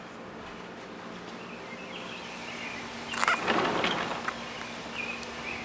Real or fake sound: real